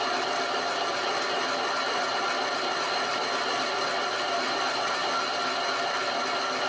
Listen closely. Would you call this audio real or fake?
real